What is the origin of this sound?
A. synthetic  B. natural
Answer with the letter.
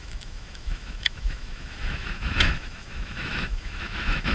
A